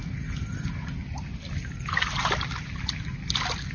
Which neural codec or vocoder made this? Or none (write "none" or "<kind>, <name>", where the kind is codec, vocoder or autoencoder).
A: none